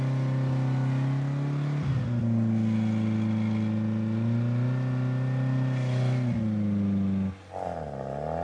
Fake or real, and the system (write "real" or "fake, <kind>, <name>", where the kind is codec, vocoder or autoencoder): real